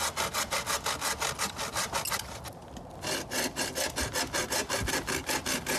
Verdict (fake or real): real